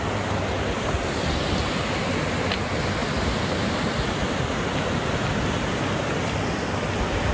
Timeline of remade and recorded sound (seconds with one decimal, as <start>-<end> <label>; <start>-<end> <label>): 0.0-7.3 recorded